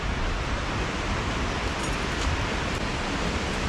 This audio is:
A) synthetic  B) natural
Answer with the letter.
B